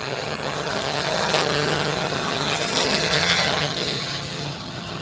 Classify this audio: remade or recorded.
remade